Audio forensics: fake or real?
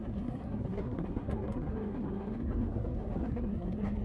fake